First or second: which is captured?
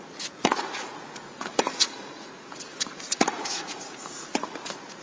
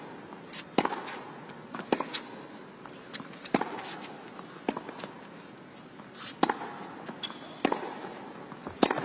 second